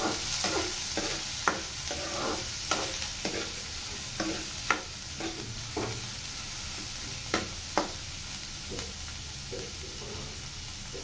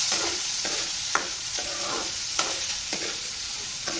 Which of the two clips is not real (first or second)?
second